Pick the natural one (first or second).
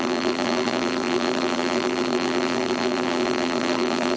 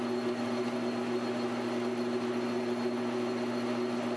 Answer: second